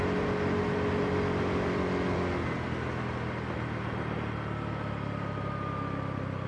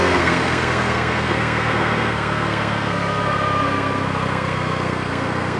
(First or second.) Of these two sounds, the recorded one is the first